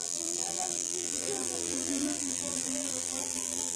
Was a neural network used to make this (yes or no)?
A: yes